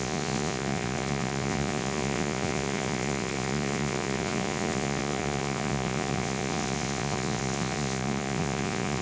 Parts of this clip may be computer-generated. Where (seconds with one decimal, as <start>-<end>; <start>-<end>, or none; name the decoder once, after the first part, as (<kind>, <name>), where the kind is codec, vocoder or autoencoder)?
0.0-9.0 (vocoder, Vocos)